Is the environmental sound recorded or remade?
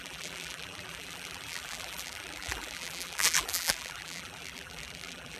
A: remade